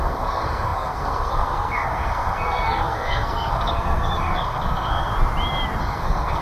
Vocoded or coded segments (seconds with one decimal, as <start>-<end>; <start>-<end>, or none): 0.0-5.1; 5.8-6.4